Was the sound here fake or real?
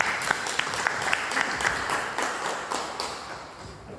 fake